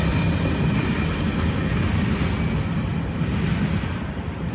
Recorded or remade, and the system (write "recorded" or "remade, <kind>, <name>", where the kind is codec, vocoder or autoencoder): recorded